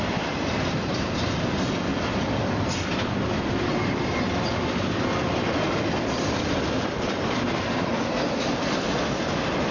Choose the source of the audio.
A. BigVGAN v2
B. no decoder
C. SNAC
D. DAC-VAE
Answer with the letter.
A